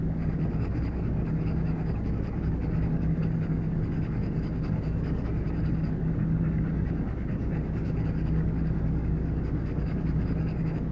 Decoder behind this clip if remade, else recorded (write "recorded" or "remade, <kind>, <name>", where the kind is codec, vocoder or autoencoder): remade, codec, DAC